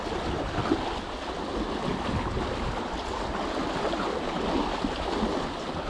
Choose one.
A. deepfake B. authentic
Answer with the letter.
B